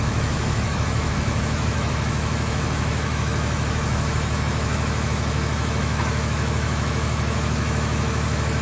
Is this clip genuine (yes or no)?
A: no